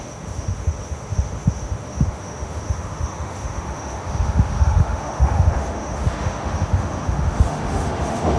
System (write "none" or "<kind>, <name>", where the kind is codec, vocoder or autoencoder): autoencoder, DAC-VAE